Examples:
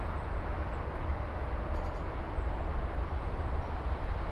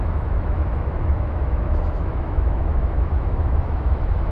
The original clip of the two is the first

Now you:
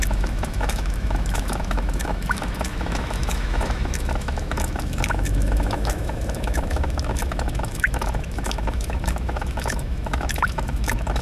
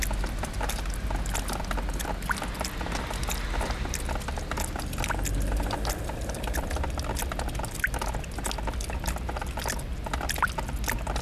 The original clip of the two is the second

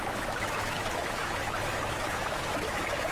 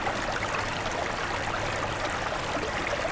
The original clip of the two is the second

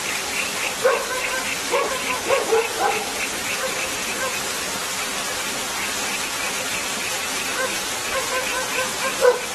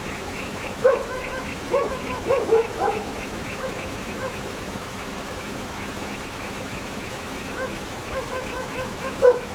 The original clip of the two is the first